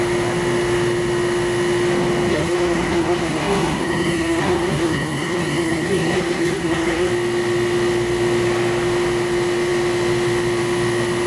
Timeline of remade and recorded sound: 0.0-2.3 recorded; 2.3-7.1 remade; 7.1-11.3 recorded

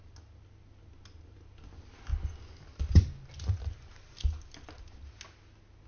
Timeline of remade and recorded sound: 0.0-5.9 recorded

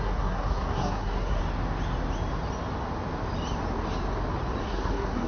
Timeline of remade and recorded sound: 0.0-1.4 remade; 1.4-4.6 recorded; 4.6-5.3 remade